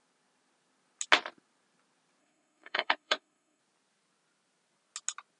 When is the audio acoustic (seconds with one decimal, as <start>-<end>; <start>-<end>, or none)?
0.0-2.2; 3.6-5.4